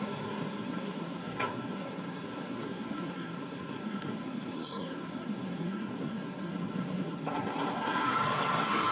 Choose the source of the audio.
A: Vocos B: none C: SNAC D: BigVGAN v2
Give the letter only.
C